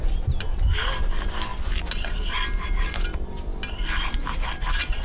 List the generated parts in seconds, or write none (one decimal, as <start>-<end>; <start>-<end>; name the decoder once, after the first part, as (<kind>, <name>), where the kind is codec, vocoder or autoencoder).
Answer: none